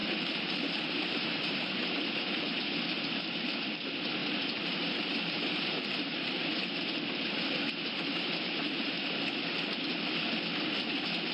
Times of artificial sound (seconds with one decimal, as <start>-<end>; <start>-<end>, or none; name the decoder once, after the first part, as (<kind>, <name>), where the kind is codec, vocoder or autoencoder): 0.0-3.2 (vocoder, BigVGAN v2); 4.2-8.9